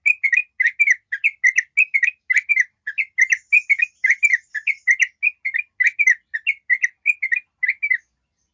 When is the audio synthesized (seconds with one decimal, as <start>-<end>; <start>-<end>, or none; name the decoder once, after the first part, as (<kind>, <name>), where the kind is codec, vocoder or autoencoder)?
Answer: none